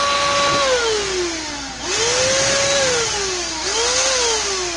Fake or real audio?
real